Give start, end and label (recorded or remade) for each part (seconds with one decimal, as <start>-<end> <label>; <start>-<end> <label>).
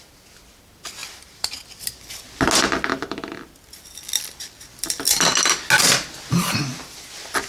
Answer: 0.0-1.0 recorded; 1.0-1.9 remade; 1.9-2.9 recorded; 2.9-5.0 remade; 5.0-7.5 recorded